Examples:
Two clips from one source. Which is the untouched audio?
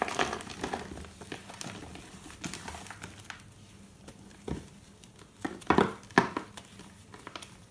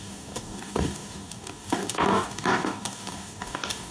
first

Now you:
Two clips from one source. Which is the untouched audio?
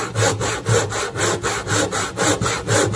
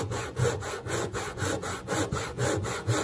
first